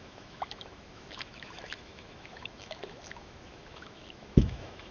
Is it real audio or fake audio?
fake